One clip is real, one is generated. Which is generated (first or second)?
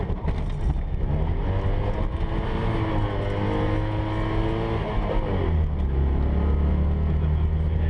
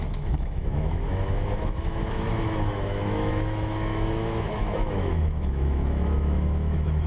second